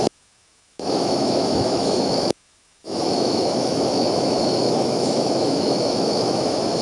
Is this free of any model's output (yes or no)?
no